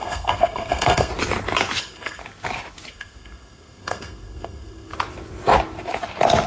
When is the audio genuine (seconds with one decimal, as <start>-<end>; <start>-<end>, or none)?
1.1-1.8; 2.2-2.9; 4.9-6.5